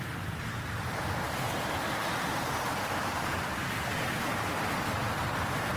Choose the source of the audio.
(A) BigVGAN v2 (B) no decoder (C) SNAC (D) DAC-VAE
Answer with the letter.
B